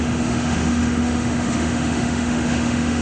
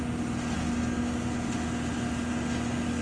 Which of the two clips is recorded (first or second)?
second